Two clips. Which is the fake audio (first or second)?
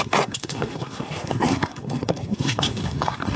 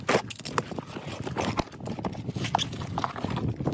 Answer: first